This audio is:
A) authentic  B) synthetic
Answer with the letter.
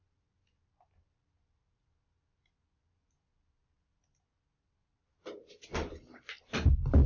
A